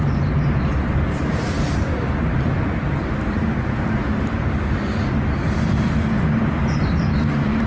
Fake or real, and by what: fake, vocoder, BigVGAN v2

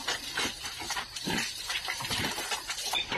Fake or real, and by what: fake, vocoder, BigVGAN v2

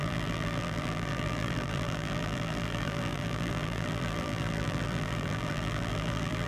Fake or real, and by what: fake, vocoder, BigVGAN v2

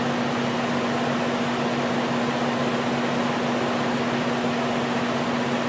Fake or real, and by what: real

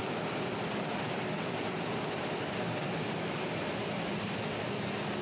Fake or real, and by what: fake, vocoder, BigVGAN v2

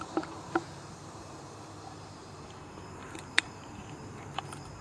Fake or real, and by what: fake, vocoder, BigVGAN v2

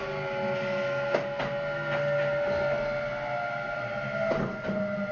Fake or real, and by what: real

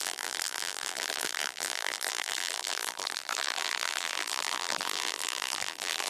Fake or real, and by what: fake, vocoder, BigVGAN v2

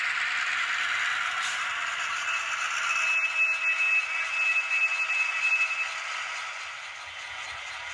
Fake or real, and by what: real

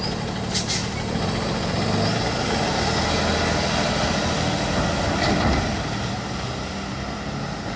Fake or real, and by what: real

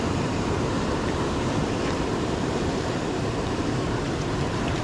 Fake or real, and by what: fake, vocoder, BigVGAN v2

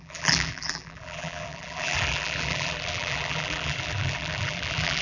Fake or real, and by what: fake, vocoder, BigVGAN v2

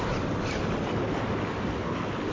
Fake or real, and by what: real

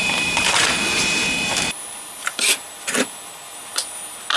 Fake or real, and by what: fake, vocoder, BigVGAN v2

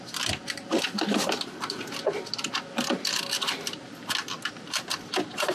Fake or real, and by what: real